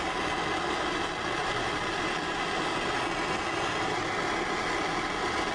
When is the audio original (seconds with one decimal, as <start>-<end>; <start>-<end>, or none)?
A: 0.0-5.5